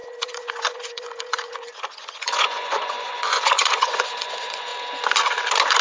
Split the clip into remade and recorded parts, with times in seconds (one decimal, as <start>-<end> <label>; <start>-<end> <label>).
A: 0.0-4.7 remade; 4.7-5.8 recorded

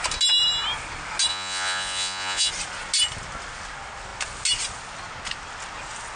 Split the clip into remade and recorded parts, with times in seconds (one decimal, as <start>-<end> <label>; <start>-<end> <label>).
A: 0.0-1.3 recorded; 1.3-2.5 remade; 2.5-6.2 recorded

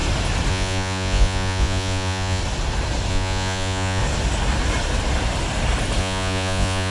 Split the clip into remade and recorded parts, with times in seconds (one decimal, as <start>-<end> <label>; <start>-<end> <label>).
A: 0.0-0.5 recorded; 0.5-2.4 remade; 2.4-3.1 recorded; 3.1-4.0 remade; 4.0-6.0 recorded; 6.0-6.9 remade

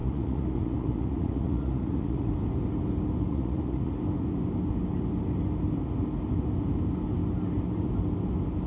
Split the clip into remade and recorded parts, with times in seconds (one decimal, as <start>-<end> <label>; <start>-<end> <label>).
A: 0.0-2.3 remade; 2.3-3.3 recorded; 3.3-3.9 remade; 3.9-8.7 recorded